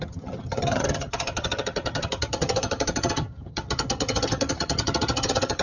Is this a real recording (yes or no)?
no